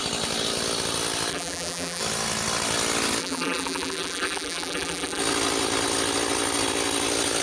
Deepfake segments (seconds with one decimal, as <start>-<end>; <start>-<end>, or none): 1.3-2.0; 3.2-5.2